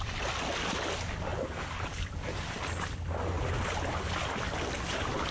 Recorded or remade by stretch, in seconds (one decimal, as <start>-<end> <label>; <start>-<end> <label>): 0.0-5.3 recorded